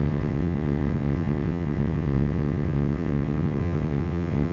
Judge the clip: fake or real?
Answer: fake